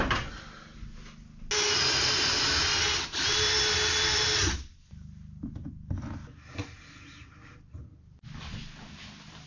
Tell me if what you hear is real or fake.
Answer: real